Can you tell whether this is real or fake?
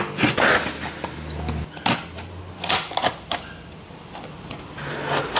real